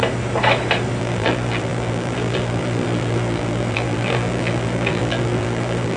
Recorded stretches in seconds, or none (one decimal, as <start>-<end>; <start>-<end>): 0.0-1.0